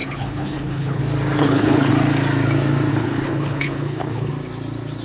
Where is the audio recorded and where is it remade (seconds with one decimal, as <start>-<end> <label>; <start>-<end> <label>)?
0.0-1.0 remade; 1.0-1.4 recorded; 1.4-1.9 remade; 1.9-2.9 recorded; 2.9-4.3 remade; 4.3-5.0 recorded